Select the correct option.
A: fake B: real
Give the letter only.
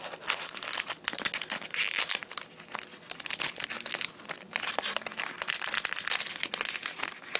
B